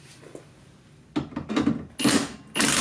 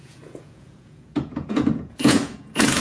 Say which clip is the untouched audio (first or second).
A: first